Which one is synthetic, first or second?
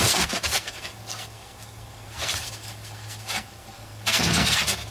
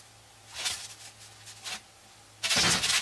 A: first